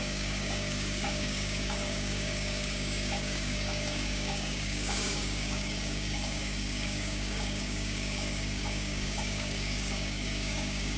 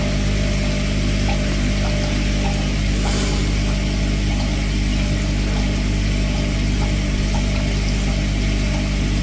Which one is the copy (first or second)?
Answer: first